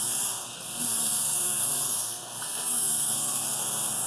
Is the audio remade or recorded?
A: remade